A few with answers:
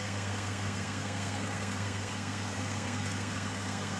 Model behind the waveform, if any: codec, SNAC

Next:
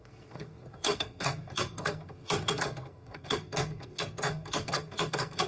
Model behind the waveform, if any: codec, SNAC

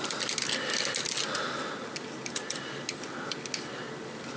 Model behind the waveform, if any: none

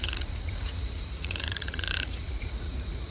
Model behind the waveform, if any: vocoder, Vocos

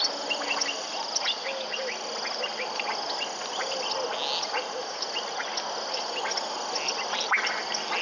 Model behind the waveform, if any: none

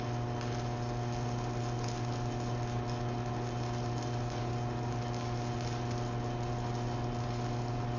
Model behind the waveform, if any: none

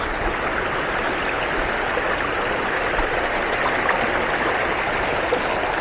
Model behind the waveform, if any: none